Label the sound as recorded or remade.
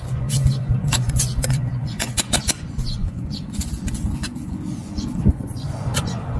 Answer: remade